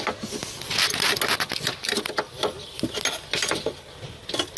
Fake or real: real